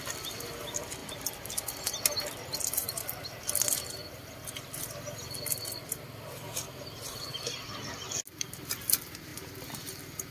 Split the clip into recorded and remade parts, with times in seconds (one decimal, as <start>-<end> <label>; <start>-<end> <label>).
0.0-10.3 recorded